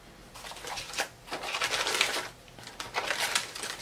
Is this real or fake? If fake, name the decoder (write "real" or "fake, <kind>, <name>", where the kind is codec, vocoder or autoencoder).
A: real